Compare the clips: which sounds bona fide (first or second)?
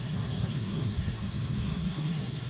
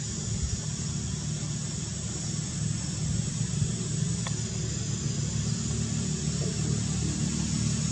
second